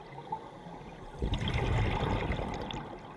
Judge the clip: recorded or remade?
recorded